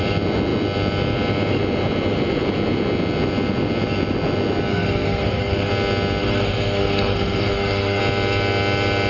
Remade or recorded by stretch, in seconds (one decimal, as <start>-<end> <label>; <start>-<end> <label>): 0.0-4.7 recorded; 4.7-5.7 remade; 5.7-6.2 recorded; 6.2-8.0 remade; 8.0-9.1 recorded